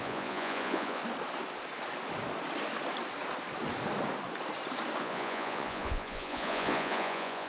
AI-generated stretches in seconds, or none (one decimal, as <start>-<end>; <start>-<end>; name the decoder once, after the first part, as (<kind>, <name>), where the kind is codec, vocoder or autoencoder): 0.0-1.0 (vocoder, Vocos); 5.0-7.5